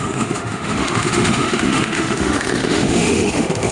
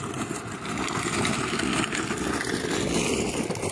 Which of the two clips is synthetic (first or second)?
first